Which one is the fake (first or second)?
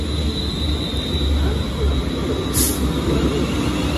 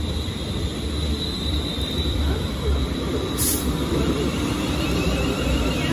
second